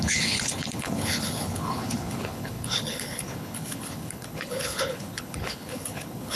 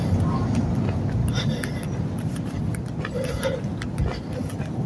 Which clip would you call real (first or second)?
second